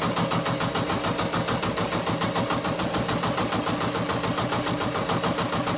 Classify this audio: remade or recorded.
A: recorded